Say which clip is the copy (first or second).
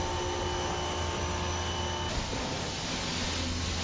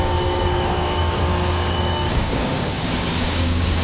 second